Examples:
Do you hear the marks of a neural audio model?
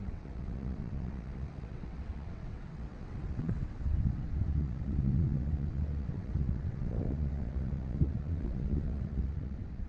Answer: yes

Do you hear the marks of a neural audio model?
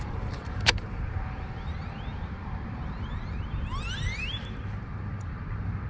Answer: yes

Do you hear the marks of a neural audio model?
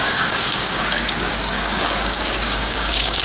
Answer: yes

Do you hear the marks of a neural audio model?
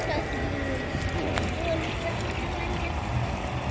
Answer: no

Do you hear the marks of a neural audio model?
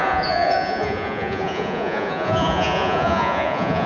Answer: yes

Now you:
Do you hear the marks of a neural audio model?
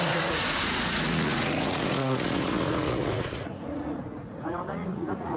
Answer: yes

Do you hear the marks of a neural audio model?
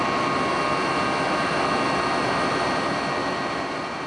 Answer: no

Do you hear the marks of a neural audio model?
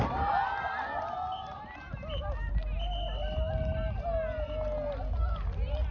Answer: no